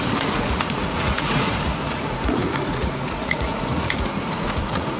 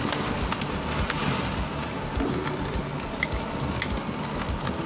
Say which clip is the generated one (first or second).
first